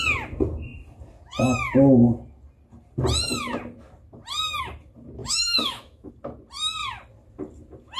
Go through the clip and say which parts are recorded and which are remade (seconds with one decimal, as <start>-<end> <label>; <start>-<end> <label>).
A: 0.0-5.2 recorded; 5.2-6.1 remade; 6.1-8.0 recorded